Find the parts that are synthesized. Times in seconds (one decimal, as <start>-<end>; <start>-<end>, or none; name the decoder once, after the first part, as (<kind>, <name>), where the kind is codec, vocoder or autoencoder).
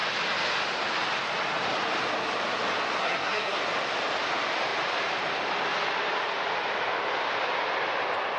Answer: 3.0-3.6 (codec, SNAC)